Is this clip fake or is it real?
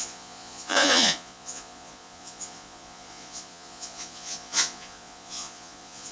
fake